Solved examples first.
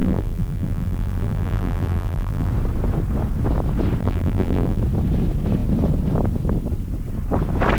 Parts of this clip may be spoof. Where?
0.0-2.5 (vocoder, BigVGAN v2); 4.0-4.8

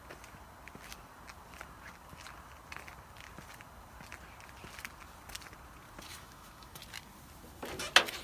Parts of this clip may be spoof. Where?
6.1-6.8 (autoencoder, DAC-VAE)

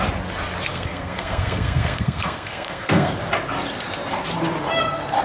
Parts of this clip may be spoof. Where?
0.7-3.1 (codec, SNAC)

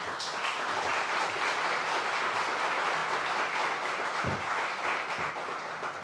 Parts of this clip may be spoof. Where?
none

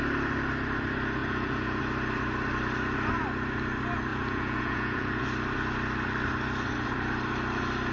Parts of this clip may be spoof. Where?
1.2-1.8 (vocoder, Vocos); 4.1-5.2